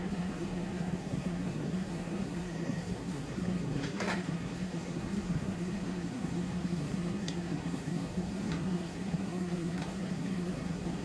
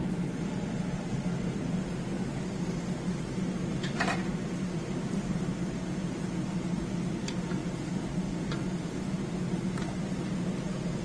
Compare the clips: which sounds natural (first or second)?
second